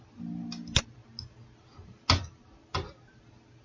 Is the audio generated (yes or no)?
no